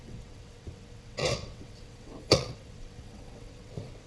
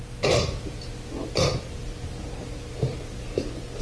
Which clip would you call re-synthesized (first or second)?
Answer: first